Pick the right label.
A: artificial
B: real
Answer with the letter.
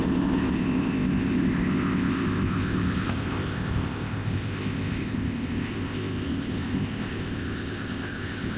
A